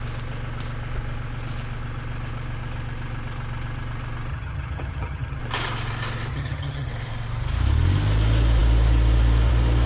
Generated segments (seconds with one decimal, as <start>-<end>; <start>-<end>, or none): 4.3-5.4; 6.3-6.9